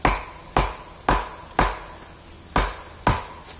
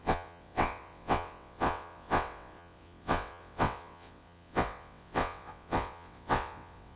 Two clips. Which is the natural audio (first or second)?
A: first